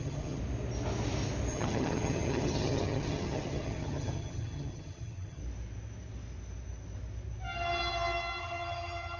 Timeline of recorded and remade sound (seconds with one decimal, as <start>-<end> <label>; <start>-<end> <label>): 0.0-0.4 remade; 0.4-1.5 recorded; 1.5-5.4 remade; 5.4-8.4 recorded; 8.4-9.2 remade